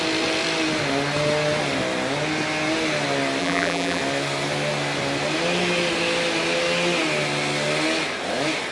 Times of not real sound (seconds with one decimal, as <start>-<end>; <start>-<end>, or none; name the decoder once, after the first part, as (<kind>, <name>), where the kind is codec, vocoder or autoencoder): 3.4-4.0 (vocoder, BigVGAN v2)